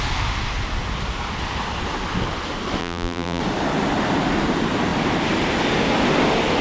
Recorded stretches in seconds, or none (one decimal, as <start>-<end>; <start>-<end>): 0.0-2.8; 3.4-6.6